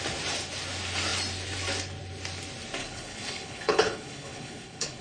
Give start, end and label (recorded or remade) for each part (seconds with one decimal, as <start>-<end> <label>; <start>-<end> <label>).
0.0-2.8 recorded; 2.8-5.0 remade